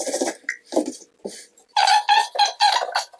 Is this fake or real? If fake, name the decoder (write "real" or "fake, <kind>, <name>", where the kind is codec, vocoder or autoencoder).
fake, vocoder, BigVGAN v2